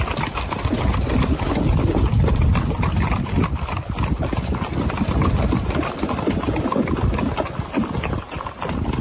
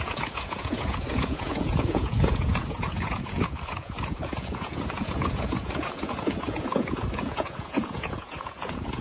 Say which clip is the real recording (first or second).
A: first